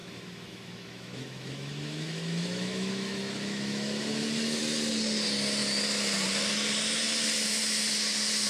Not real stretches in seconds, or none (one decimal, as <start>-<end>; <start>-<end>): 0.0-4.6